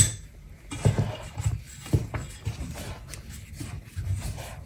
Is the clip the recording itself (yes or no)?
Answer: yes